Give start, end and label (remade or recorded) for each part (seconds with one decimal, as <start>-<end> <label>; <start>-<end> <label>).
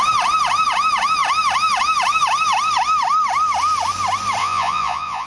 0.0-4.4 recorded; 4.4-5.3 remade